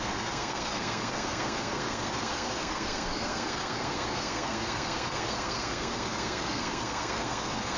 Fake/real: fake